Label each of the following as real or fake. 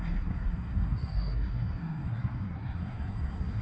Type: fake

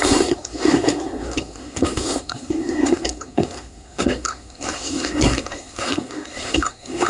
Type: fake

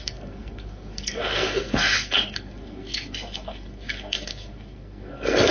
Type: fake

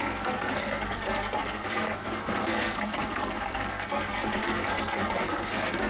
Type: fake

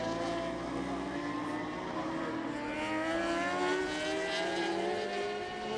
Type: real